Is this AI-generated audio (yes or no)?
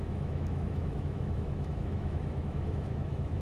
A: yes